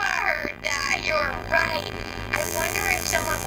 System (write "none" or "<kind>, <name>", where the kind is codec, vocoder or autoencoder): vocoder, BigVGAN v2